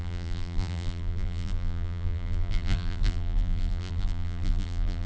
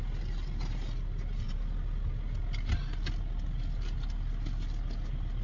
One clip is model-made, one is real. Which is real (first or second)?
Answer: second